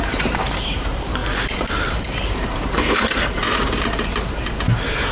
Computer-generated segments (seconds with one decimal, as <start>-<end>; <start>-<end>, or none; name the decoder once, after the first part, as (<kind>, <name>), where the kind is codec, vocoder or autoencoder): 0.0-5.1 (vocoder, BigVGAN v2)